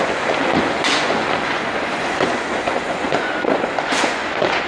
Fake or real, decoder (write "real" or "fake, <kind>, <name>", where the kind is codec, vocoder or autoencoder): fake, vocoder, Vocos